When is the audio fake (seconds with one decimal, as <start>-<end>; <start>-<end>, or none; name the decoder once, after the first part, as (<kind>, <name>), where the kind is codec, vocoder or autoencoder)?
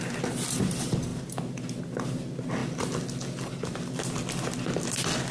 2.6-3.5 (vocoder, BigVGAN v2)